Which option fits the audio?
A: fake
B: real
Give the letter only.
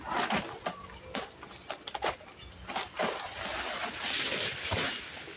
B